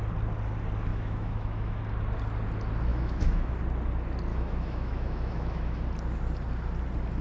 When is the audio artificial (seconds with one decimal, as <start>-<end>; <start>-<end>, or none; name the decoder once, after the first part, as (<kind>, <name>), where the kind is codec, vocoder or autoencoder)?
0.9-1.8 (autoencoder, DAC-VAE); 2.9-3.6; 4.3-5.8